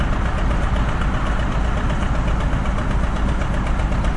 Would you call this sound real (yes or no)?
yes